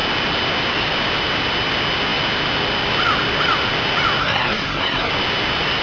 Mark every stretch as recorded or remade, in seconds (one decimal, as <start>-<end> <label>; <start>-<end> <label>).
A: 0.0-4.2 recorded; 4.2-5.1 remade; 5.1-5.8 recorded